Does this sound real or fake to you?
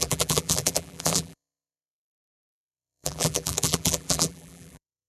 fake